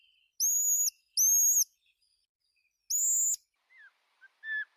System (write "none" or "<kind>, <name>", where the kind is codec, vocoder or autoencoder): none